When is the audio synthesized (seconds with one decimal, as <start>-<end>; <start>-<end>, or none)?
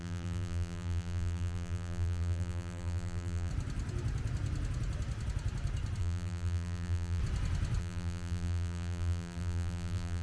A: 0.0-3.5; 6.0-7.2; 7.8-10.2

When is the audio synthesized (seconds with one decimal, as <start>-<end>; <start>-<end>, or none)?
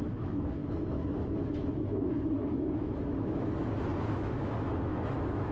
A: 0.0-5.5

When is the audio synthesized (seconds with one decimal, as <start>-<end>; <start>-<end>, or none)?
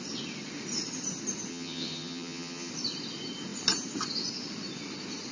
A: 1.5-2.7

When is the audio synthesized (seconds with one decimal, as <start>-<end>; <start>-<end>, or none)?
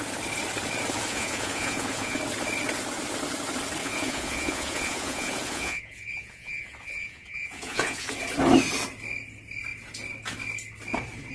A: 1.1-2.2; 3.8-8.1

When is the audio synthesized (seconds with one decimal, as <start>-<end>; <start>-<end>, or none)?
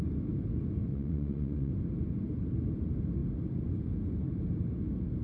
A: 0.9-1.7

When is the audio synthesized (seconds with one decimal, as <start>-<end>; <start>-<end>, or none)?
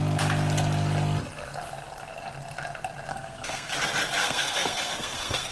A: 3.1-3.7; 4.2-5.5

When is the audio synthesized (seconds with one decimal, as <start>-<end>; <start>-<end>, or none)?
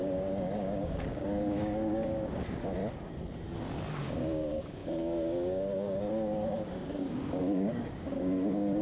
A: 0.0-2.8; 4.0-8.8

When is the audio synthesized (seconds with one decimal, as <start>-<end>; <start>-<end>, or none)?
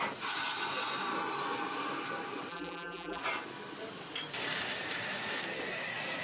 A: 2.5-3.2